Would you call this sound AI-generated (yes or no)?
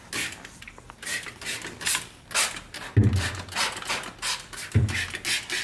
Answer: no